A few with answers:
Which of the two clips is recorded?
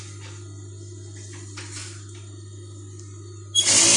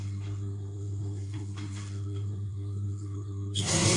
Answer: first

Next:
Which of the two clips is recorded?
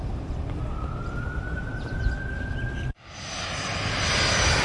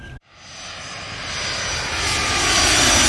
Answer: second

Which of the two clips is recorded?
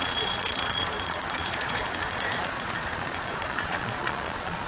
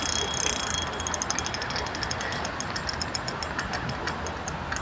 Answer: second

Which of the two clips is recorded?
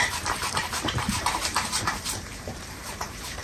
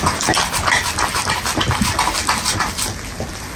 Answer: second